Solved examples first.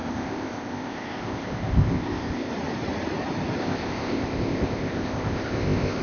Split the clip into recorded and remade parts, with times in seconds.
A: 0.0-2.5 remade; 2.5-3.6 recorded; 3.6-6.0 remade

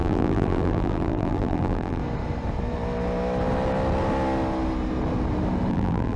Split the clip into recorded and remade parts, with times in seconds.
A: 0.0-2.0 remade; 2.0-5.7 recorded; 5.7-6.2 remade